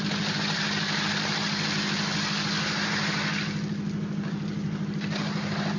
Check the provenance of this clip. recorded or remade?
recorded